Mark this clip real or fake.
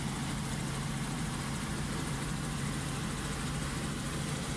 real